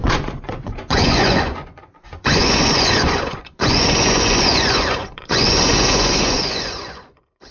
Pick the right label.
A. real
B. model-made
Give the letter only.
B